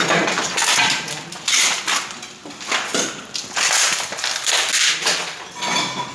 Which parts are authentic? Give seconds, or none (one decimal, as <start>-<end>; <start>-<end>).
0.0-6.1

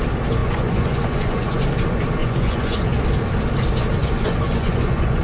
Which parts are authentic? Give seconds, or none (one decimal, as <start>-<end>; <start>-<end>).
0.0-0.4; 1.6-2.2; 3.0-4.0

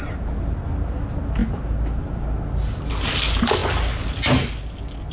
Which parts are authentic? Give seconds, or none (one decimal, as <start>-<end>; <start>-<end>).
0.0-5.1

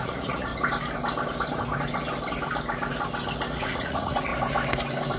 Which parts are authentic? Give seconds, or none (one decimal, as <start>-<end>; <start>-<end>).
0.5-3.6; 4.3-5.2

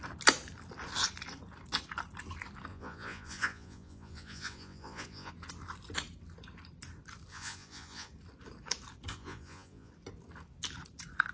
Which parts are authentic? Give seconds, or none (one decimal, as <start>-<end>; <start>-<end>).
0.0-2.7; 5.3-7.3; 8.1-9.1; 9.9-11.3